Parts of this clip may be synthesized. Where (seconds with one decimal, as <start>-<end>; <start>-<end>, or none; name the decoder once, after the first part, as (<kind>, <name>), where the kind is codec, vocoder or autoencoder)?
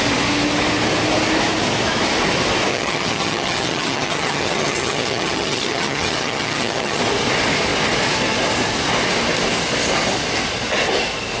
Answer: 2.7-7.0 (vocoder, HiFi-GAN)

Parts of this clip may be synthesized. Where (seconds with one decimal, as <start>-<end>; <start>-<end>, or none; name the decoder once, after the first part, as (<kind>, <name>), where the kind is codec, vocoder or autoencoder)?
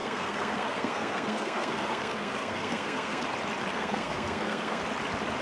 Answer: 0.0-3.2 (codec, SNAC); 3.7-4.8